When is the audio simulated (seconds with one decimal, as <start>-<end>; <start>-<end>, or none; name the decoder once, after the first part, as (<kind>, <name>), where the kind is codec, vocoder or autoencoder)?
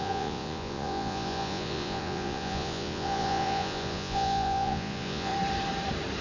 0.0-5.3 (vocoder, Vocos)